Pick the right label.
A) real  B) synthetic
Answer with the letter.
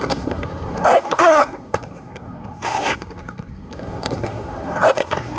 B